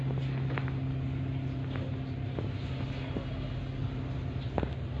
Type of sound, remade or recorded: recorded